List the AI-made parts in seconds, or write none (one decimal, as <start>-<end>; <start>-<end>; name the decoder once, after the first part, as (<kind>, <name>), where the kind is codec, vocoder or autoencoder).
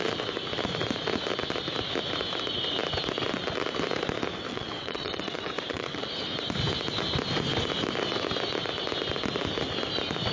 4.5-6.1 (vocoder, WaveNeXt)